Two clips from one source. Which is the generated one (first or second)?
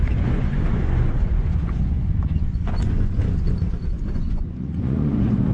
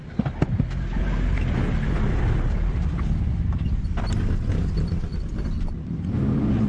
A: first